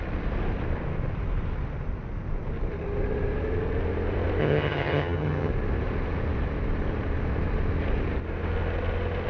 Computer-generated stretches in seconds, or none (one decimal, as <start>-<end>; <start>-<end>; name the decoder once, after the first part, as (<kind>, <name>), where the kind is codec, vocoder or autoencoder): 4.4-5.5 (vocoder, HiFi-GAN)